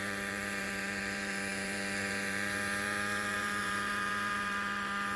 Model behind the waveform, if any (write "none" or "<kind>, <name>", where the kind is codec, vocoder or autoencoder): vocoder, BigVGAN v2